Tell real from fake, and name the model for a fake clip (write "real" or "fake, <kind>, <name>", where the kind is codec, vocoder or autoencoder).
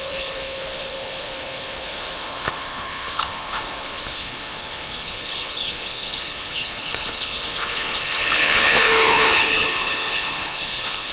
fake, codec, HILCodec